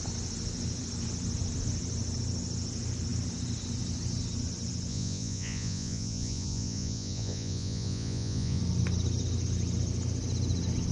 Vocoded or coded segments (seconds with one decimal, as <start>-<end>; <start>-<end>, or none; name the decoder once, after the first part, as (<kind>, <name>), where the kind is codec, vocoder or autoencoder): 4.9-8.6 (vocoder, Vocos)